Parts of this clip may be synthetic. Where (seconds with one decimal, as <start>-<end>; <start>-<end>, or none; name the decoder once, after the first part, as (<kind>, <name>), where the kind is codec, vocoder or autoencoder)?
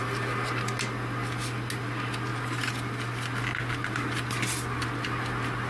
none